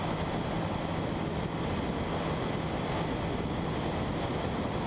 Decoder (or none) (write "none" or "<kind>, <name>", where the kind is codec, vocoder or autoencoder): none